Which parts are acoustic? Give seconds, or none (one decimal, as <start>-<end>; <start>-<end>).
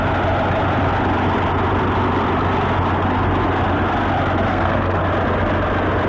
0.0-4.5; 5.0-6.1